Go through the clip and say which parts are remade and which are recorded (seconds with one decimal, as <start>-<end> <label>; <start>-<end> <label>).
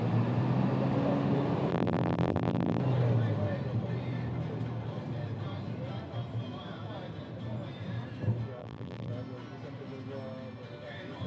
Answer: 0.0-1.7 recorded; 1.7-2.8 remade; 2.8-8.6 recorded; 8.6-9.1 remade; 9.1-11.3 recorded